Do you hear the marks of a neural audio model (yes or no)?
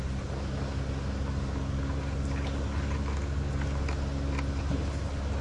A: no